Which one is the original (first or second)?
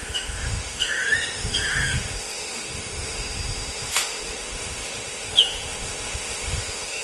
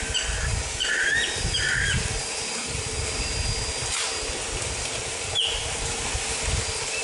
second